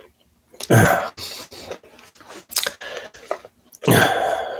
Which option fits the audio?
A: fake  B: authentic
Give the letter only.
B